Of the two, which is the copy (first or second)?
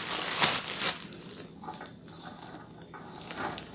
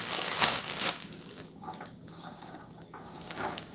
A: second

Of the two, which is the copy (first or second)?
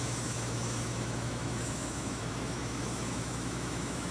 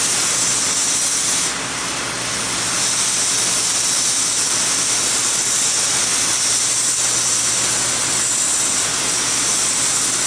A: first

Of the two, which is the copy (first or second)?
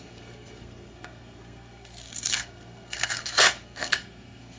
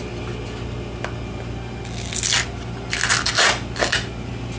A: first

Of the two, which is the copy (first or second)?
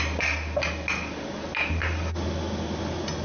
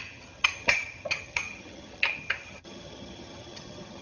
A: second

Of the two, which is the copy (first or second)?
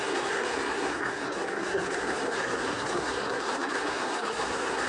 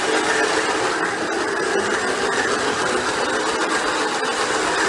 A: first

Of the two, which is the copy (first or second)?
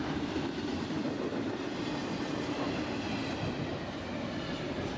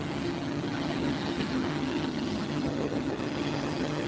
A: second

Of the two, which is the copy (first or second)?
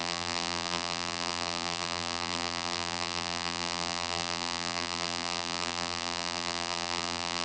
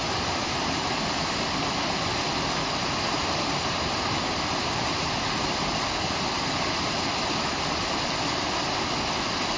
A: first